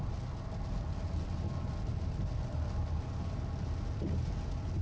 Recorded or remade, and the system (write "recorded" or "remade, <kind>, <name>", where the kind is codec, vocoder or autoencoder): recorded